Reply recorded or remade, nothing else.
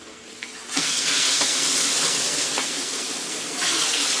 remade